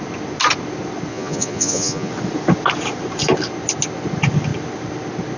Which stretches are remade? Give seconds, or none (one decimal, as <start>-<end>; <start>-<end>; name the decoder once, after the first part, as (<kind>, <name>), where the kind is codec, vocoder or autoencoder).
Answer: 1.1-2.1 (vocoder, Vocos)